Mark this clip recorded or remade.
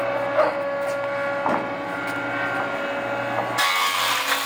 recorded